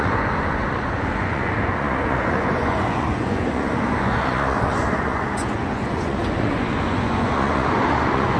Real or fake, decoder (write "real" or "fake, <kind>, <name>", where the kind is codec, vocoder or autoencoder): fake, vocoder, Vocos